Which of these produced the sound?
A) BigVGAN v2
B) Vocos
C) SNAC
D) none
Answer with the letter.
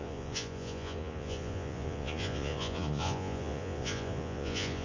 B